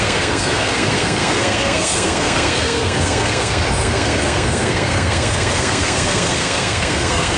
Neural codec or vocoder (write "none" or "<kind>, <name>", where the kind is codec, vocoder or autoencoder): codec, SNAC